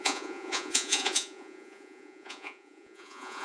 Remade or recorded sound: remade